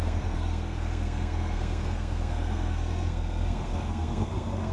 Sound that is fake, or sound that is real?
fake